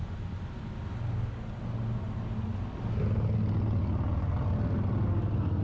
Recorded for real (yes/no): yes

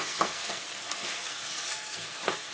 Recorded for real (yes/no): no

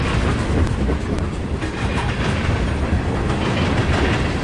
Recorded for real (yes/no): yes